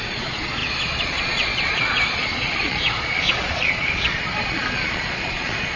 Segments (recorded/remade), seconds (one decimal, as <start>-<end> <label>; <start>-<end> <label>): 0.0-5.8 remade